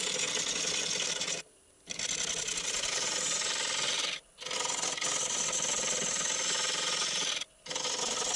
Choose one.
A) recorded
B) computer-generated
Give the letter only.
A